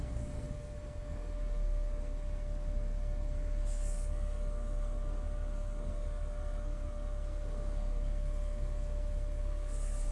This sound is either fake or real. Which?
fake